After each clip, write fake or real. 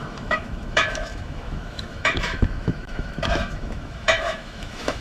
fake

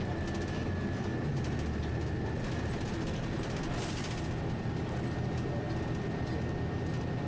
real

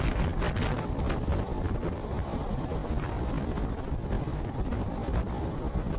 real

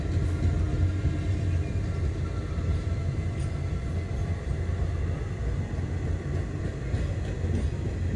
real